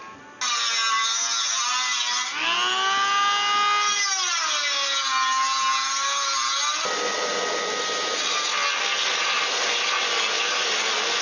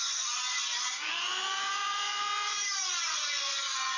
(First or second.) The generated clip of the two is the second